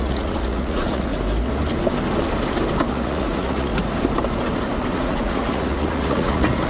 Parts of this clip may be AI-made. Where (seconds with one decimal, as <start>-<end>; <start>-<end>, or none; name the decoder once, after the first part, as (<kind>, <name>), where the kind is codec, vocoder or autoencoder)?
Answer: 0.0-1.1 (vocoder, Vocos); 2.9-3.7; 4.9-6.7